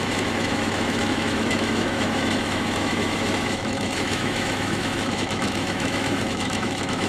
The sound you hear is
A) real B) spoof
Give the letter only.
B